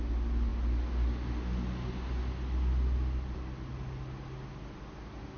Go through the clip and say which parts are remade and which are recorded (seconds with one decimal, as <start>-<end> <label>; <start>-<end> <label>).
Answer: 0.0-5.4 recorded